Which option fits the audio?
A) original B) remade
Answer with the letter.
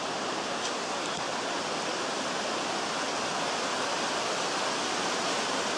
A